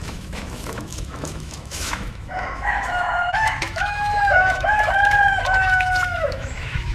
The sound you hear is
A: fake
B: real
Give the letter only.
A